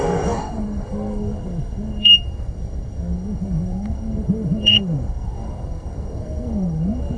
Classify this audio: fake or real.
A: fake